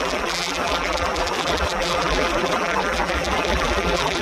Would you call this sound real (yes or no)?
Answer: no